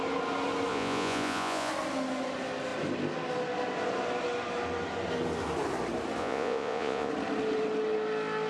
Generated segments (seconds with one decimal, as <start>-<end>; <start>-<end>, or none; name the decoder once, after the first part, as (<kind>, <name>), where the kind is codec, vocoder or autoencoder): 0.7-1.7 (vocoder, Vocos); 6.2-7.1